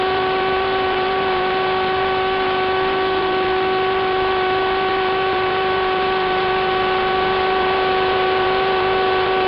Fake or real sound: fake